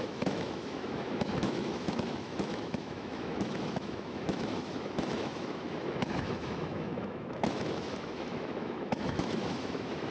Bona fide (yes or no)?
no